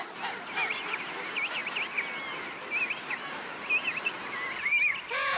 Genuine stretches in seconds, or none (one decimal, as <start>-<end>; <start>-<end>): 0.0-5.4